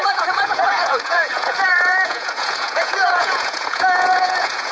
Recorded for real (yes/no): no